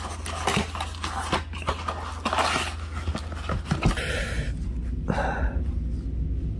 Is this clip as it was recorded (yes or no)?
yes